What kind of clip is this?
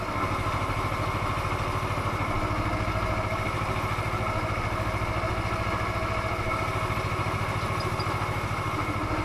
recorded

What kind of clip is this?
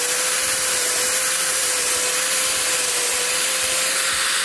remade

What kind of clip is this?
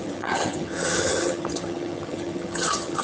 remade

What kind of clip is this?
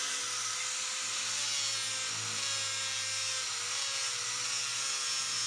recorded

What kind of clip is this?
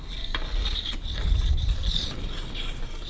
recorded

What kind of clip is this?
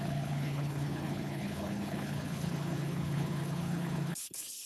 remade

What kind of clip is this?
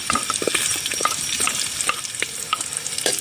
remade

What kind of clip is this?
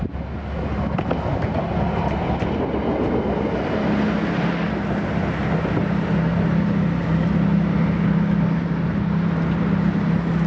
recorded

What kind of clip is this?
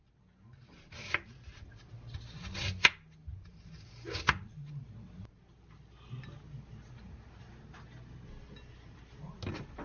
recorded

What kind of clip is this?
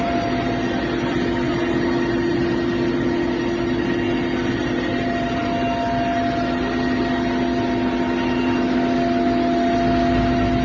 recorded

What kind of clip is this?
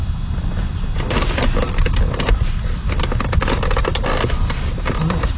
recorded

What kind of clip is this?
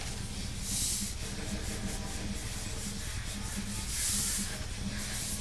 recorded